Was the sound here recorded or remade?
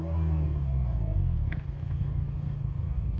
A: remade